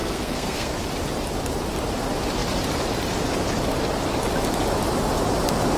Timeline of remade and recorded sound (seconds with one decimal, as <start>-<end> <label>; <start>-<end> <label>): 0.0-0.7 remade; 0.7-5.8 recorded